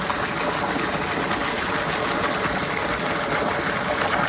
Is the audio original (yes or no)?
yes